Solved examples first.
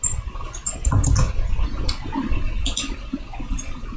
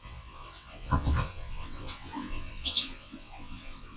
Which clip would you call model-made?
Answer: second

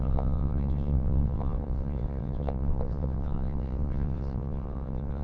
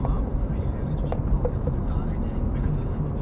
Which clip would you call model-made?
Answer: first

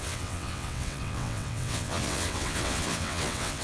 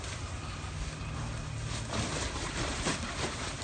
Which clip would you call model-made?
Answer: first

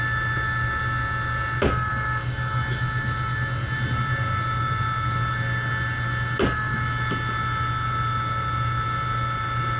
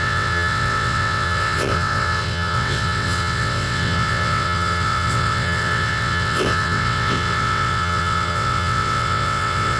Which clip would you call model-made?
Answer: second